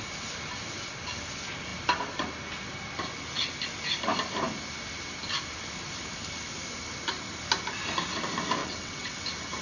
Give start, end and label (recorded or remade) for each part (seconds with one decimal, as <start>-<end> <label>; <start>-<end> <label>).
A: 0.0-8.6 recorded; 8.6-9.2 remade; 9.2-9.6 recorded